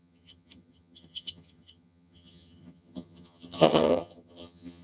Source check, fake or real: fake